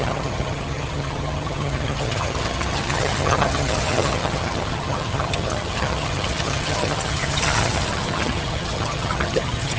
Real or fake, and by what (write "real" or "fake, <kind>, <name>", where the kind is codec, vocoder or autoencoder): fake, vocoder, HiFi-GAN